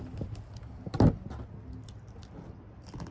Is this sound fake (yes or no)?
no